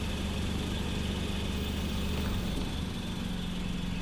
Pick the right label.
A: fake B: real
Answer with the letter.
B